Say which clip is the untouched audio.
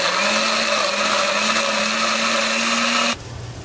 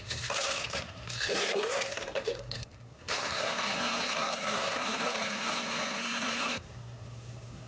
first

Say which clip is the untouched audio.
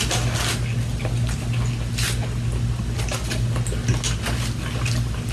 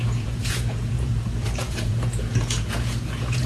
first